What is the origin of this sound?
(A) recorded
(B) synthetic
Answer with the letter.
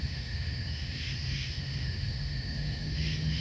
B